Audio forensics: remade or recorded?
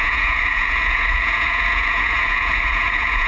remade